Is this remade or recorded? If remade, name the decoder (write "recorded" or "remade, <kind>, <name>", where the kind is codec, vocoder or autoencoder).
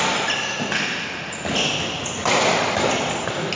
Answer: recorded